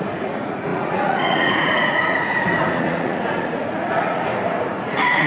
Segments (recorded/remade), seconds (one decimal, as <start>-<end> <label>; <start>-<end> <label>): 0.0-4.3 remade; 4.3-4.8 recorded; 4.8-5.3 remade